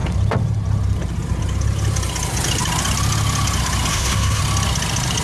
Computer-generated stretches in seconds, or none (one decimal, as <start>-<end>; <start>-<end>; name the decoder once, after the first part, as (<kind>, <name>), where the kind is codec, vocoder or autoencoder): 3.9-4.4 (codec, SNAC)